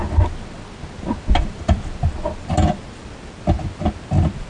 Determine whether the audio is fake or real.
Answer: real